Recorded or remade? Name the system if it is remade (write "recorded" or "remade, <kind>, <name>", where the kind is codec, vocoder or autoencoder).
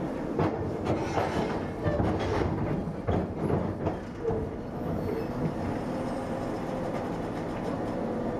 recorded